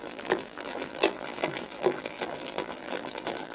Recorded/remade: remade